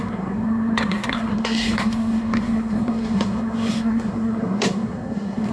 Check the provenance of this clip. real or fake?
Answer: fake